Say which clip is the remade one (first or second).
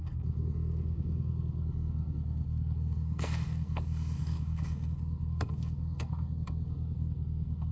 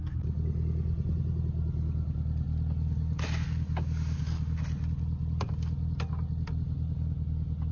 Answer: first